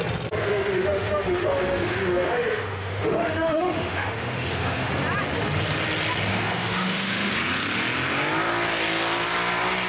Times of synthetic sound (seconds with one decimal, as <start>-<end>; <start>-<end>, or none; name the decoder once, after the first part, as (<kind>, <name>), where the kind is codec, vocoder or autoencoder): 0.4-4.9 (autoencoder, DAC-VAE); 6.3-7.3